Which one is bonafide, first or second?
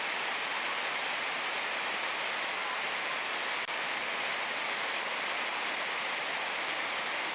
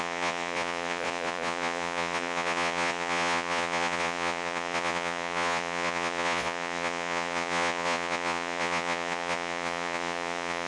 first